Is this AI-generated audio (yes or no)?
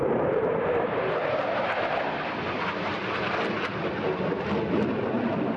no